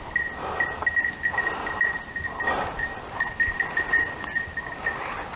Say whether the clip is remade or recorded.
recorded